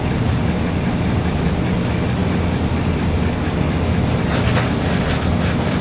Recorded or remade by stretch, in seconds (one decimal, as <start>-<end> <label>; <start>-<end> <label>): 0.0-5.8 recorded